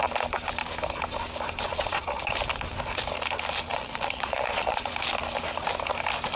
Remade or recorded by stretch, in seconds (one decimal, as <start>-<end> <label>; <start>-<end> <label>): 0.0-1.7 recorded; 1.7-2.2 remade; 2.2-3.7 recorded; 3.7-4.9 remade; 4.9-6.4 recorded